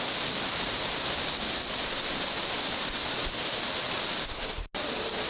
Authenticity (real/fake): real